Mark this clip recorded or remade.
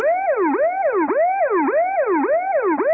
recorded